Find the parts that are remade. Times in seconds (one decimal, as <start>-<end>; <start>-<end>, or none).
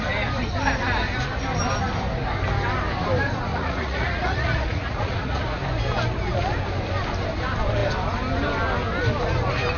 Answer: 3.5-5.4